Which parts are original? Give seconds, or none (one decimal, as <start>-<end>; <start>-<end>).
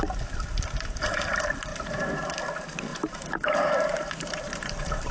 0.0-1.7; 2.4-2.9